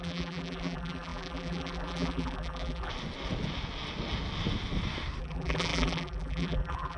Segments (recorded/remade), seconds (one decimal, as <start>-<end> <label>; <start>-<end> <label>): 0.0-2.9 remade; 2.9-5.2 recorded; 5.2-7.0 remade